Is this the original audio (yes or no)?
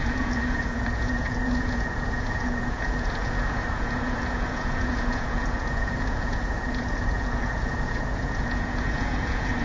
no